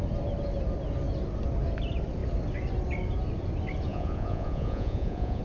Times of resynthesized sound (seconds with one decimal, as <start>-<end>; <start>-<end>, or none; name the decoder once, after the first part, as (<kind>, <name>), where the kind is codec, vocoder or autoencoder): 3.9-5.4 (vocoder, Vocos)

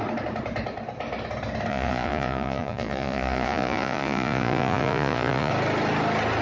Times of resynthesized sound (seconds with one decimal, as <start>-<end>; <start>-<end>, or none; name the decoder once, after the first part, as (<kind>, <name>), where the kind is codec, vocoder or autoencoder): 1.7-5.5 (vocoder, Vocos)

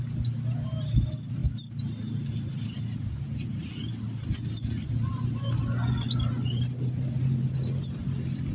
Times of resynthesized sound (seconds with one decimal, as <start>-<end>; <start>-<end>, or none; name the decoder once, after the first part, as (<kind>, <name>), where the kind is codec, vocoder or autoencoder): none

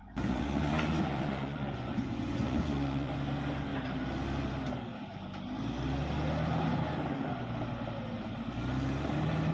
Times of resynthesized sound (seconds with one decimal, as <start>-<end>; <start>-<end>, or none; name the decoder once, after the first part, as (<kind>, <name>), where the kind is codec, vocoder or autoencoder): 0.0-3.1 (vocoder, Vocos)